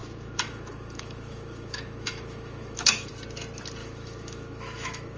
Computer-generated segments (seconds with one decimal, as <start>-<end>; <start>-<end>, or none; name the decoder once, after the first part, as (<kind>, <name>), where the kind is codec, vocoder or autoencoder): 0.0-3.1 (autoencoder, DAC-VAE); 3.8-5.2